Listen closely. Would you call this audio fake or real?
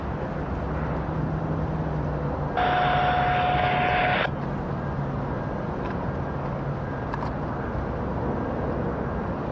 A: real